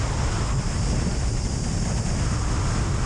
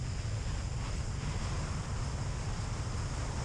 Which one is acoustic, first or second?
first